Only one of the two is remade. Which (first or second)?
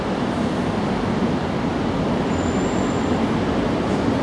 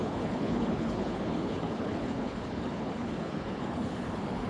second